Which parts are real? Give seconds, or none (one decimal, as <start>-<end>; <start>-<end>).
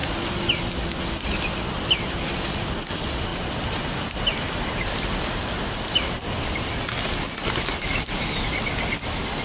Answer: 0.5-9.4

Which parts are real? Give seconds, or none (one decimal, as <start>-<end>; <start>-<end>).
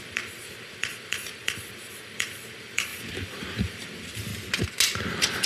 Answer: 4.3-5.1